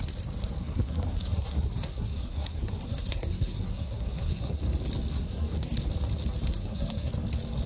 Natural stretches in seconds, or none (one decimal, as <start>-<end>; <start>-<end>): 0.0-0.6; 4.6-5.1; 5.8-6.5; 7.1-7.7